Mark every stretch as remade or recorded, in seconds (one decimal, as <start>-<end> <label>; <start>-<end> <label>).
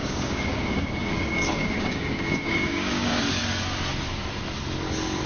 0.0-3.2 remade; 3.2-5.3 recorded